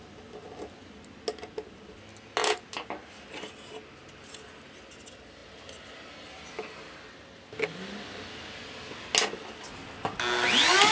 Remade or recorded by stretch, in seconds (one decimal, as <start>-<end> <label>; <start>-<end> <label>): 0.0-10.9 recorded